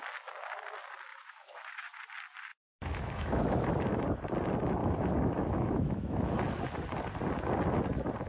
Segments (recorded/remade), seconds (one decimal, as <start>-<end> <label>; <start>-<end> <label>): 0.0-1.1 recorded; 1.1-2.0 remade; 2.0-2.5 recorded; 2.5-3.7 remade; 3.7-4.8 recorded; 4.8-6.3 remade; 6.3-8.3 recorded